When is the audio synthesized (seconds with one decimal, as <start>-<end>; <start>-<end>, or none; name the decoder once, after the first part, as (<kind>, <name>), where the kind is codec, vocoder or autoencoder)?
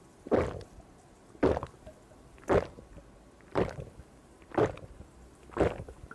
4.2-6.1 (vocoder, BigVGAN v2)